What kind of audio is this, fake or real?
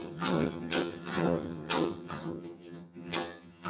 fake